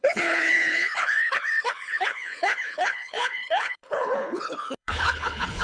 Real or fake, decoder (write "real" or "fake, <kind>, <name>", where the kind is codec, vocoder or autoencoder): fake, codec, HILCodec